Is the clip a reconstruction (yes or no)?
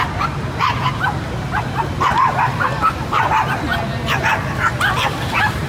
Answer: no